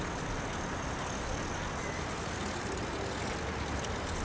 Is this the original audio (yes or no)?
yes